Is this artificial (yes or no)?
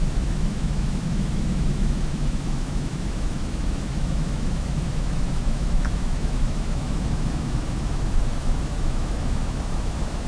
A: yes